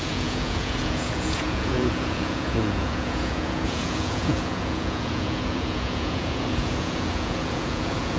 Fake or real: fake